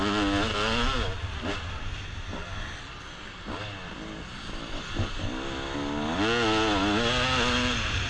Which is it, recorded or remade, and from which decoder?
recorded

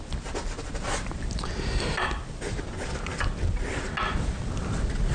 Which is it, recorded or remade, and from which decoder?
recorded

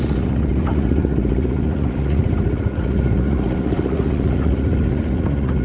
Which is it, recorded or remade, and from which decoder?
remade, vocoder, Vocos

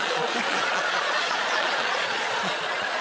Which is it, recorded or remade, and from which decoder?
remade, vocoder, Vocos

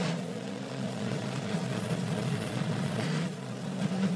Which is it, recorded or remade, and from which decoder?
remade, vocoder, Vocos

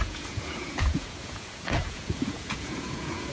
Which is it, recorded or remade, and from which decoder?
remade, vocoder, Vocos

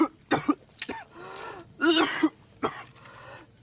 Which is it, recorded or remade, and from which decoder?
recorded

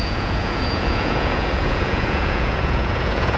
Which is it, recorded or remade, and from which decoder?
remade, vocoder, Vocos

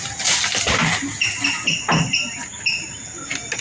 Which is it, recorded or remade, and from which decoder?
recorded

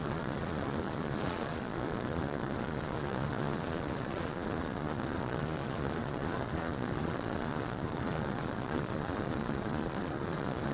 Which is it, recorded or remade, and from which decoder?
remade, vocoder, Vocos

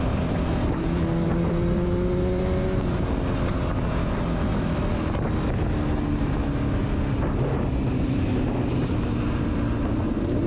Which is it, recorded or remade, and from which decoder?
recorded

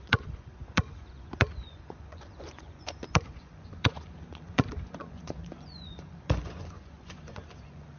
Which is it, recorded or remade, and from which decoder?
remade, vocoder, Vocos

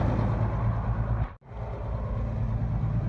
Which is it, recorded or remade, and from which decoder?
recorded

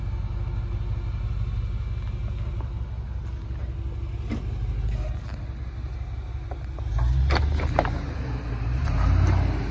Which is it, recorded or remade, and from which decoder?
recorded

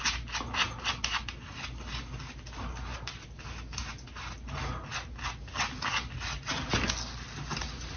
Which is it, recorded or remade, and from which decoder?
recorded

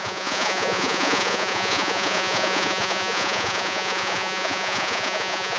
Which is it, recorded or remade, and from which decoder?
remade, vocoder, Vocos